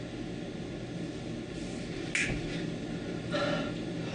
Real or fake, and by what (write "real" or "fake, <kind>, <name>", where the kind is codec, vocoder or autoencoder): real